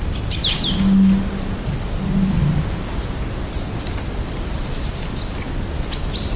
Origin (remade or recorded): recorded